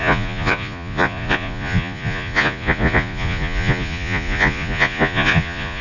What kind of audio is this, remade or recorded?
remade